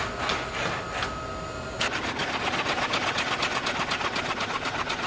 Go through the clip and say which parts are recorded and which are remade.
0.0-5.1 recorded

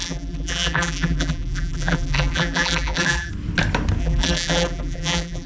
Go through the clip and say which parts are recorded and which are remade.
0.0-3.3 remade; 3.3-4.0 recorded; 4.0-5.5 remade

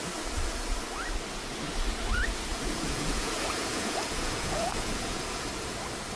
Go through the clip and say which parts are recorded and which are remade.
0.0-2.5 recorded; 2.5-5.5 remade; 5.5-6.2 recorded

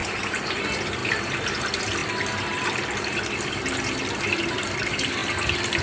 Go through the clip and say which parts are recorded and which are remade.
0.0-5.8 recorded

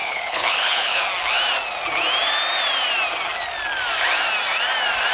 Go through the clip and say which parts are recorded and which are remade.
0.0-1.0 remade; 1.0-5.1 recorded

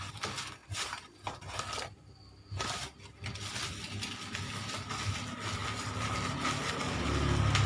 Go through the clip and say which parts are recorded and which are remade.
0.0-0.6 recorded; 0.6-1.6 remade; 1.6-7.7 recorded

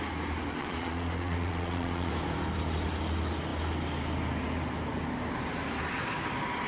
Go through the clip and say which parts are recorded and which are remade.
0.0-0.6 recorded; 0.6-2.1 remade; 2.1-6.7 recorded